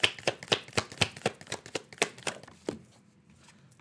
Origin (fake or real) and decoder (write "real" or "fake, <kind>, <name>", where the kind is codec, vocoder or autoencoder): real